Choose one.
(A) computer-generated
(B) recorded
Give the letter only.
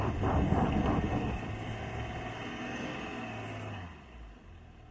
B